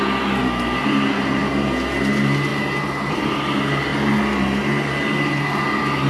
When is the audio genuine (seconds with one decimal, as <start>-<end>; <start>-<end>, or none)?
0.0-6.1